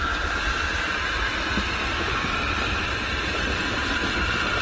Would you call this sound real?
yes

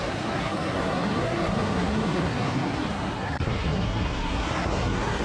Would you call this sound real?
no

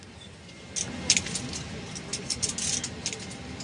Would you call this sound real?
yes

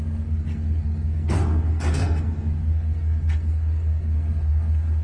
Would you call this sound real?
no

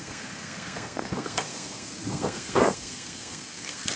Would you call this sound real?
no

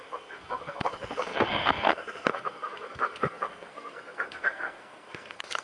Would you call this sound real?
no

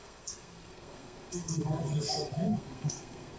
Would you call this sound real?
no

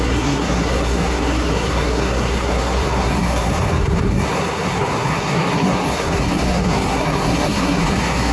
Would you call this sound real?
no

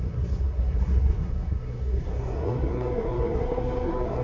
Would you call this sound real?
no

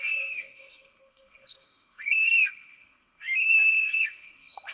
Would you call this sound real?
no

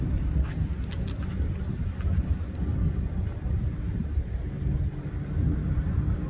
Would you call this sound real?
yes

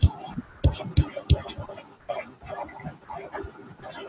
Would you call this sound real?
yes